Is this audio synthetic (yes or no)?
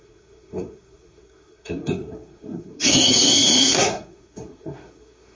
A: yes